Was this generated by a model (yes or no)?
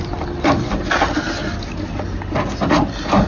no